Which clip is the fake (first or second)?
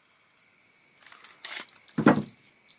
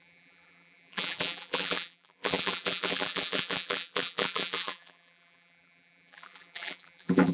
second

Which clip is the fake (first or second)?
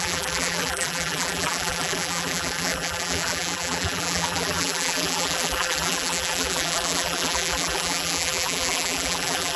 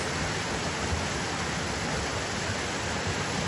first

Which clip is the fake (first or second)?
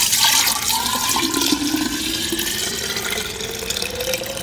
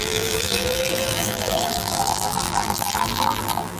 second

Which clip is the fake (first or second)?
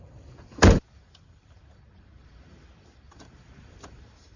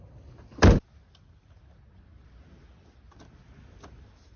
first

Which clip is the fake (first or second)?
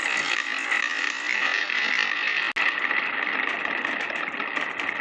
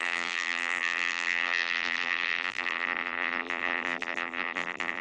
second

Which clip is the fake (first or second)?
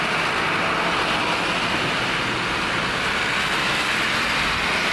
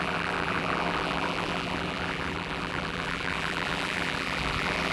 second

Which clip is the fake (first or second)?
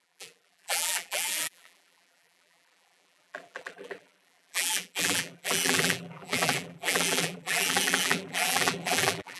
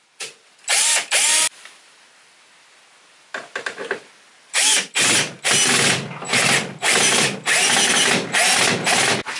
first